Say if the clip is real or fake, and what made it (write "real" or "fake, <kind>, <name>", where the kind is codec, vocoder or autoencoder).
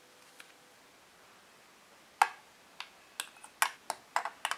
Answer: real